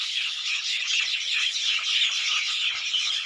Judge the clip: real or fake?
fake